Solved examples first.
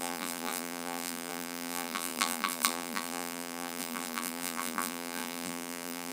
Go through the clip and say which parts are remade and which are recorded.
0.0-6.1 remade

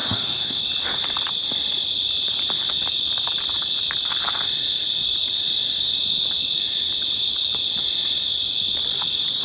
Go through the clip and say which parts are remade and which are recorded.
0.0-0.6 remade; 0.6-9.4 recorded

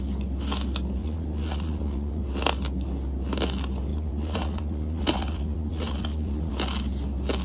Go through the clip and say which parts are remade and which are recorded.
0.0-1.0 recorded; 1.0-2.2 remade; 2.2-3.9 recorded; 3.9-6.5 remade; 6.5-7.4 recorded

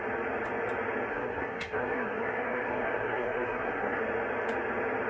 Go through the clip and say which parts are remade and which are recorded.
0.0-1.1 recorded; 1.1-4.0 remade; 4.0-5.1 recorded